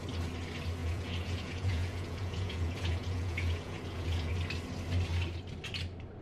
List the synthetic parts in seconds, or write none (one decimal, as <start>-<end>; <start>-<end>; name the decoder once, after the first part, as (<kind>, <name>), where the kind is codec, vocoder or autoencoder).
0.8-4.3 (vocoder, Vocos)